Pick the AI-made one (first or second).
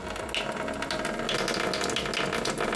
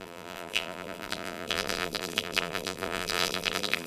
second